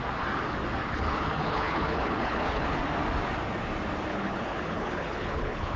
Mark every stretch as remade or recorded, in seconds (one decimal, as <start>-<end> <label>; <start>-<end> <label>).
0.0-0.8 recorded; 0.8-2.8 remade; 2.8-4.1 recorded; 4.1-5.8 remade